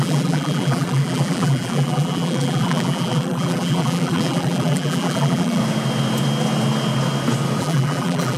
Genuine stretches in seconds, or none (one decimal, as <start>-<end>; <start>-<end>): 5.6-7.6